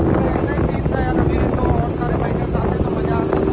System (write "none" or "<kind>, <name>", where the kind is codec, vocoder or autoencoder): none